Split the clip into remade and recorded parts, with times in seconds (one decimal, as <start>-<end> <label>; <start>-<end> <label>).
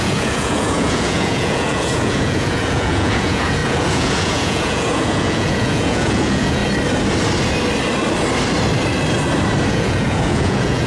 0.0-6.6 remade; 6.6-9.7 recorded; 9.7-10.9 remade